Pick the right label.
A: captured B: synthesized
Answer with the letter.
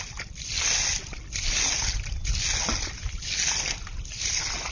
A